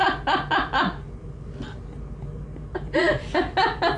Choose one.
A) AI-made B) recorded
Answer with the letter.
B